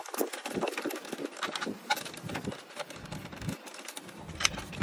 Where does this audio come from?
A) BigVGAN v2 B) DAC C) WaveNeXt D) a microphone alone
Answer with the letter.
D